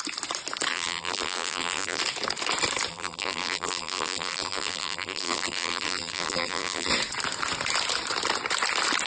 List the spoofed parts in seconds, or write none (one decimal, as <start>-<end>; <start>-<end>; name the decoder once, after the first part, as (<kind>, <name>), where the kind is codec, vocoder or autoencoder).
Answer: 0.7-2.0 (vocoder, BigVGAN v2); 2.9-6.9